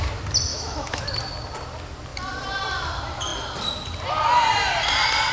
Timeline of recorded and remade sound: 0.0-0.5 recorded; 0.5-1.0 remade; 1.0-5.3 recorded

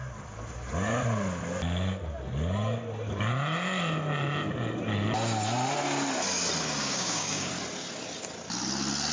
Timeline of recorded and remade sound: 0.0-6.8 recorded; 6.8-7.5 remade; 7.5-9.1 recorded

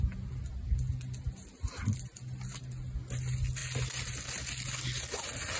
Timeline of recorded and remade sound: 0.0-5.6 recorded

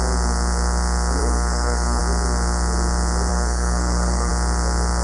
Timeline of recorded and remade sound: 0.0-1.2 recorded; 1.2-2.0 remade; 2.0-3.3 recorded; 3.3-4.3 remade; 4.3-5.0 recorded

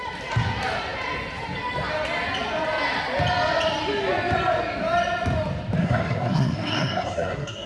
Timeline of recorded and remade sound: 0.0-5.8 recorded; 5.8-7.7 remade

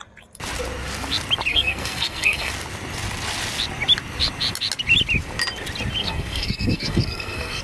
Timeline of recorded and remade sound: 0.0-1.5 recorded; 1.5-2.5 remade; 2.5-6.0 recorded; 6.0-7.6 remade